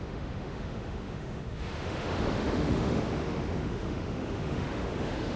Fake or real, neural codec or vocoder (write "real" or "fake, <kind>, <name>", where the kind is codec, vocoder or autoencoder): fake, autoencoder, DAC-VAE